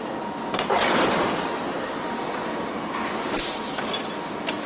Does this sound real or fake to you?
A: real